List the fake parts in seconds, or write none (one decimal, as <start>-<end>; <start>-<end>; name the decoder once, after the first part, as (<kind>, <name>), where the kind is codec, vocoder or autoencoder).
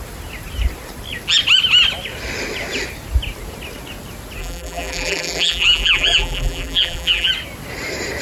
4.4-7.3 (vocoder, BigVGAN v2)